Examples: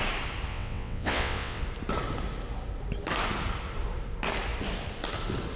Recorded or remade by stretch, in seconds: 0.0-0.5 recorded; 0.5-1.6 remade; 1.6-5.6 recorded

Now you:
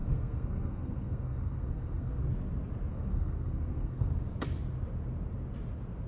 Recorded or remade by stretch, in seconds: 0.0-2.2 remade; 2.2-2.9 recorded; 2.9-4.1 remade; 4.1-6.1 recorded